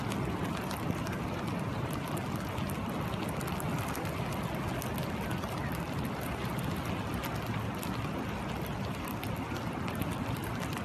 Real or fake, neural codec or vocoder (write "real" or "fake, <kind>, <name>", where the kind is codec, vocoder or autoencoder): real